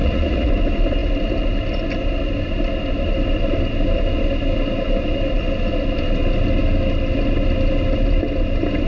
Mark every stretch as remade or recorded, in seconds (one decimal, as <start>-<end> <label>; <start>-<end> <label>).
0.0-0.5 remade; 0.5-8.9 recorded